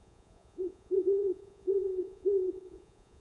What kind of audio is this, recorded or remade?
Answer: remade